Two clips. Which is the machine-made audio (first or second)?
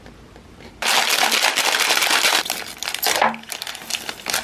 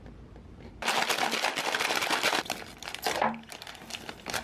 second